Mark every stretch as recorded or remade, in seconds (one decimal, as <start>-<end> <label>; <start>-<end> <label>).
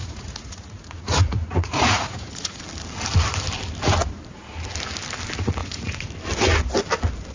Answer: 0.0-2.6 remade; 2.6-5.6 recorded; 5.6-6.1 remade; 6.1-7.3 recorded